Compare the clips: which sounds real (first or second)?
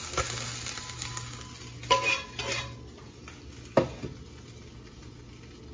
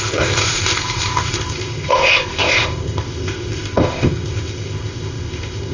first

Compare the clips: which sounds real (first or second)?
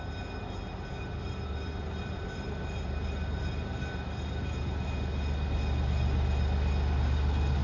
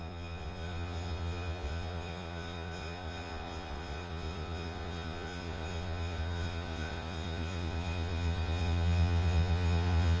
first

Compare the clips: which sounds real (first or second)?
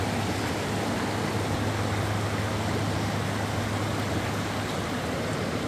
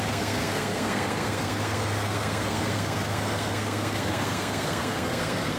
first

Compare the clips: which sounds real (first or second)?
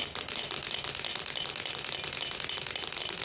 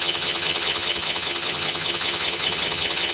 first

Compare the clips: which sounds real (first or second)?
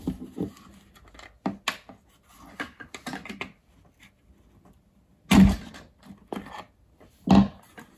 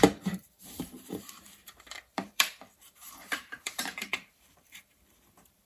first